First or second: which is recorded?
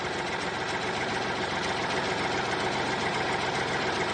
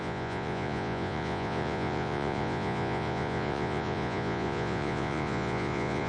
first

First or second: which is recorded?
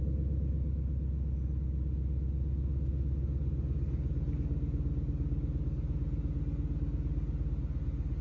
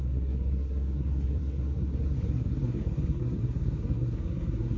first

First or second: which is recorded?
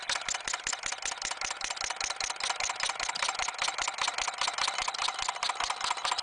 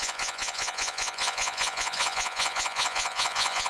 first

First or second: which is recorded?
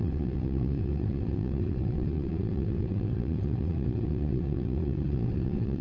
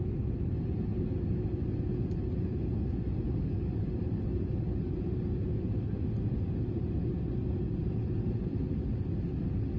second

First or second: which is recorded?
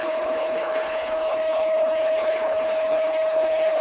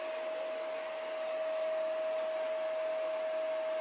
second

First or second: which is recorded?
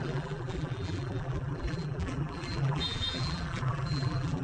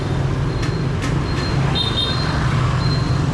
second